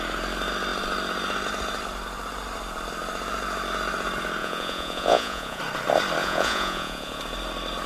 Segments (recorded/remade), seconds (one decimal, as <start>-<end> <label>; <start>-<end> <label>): 0.0-4.4 recorded; 4.4-5.6 remade; 5.6-6.2 recorded; 6.2-7.2 remade; 7.2-7.9 recorded